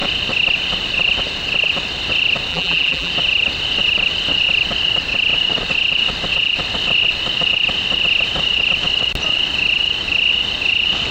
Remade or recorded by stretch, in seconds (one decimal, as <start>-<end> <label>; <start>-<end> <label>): 0.0-2.5 recorded; 2.5-3.1 remade; 3.1-11.1 recorded